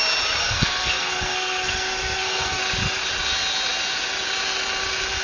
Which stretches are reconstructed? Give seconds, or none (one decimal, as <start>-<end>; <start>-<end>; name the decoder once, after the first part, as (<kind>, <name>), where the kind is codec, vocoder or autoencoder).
0.4-2.6 (codec, SNAC)